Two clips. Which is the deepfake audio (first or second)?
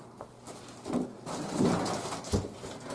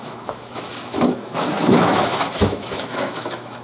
second